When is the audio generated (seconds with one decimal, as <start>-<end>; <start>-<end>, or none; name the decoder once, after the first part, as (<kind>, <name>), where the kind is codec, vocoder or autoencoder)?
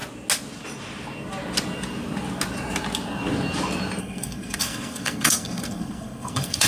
4.0-6.7 (codec, SNAC)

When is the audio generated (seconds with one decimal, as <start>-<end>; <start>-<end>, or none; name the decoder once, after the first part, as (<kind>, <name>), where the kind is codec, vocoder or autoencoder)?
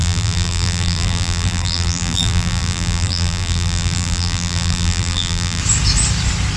0.0-5.6 (vocoder, BigVGAN v2)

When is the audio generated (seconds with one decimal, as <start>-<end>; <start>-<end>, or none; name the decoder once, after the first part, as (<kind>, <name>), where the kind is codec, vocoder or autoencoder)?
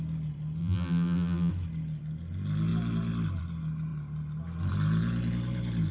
0.6-1.5 (vocoder, BigVGAN v2)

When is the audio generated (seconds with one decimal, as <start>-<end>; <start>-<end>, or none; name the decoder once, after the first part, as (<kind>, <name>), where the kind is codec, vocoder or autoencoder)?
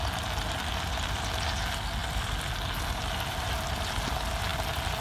none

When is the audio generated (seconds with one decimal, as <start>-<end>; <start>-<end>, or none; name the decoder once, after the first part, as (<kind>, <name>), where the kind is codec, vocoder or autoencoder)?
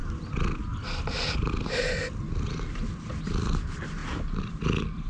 none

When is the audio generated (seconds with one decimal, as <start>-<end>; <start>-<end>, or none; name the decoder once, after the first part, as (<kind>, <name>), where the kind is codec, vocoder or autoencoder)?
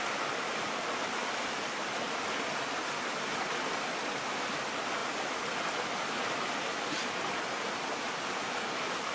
none